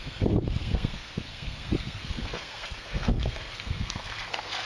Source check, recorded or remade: remade